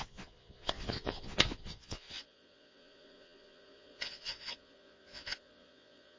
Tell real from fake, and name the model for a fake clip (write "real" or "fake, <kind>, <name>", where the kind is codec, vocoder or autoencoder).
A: fake, vocoder, Vocos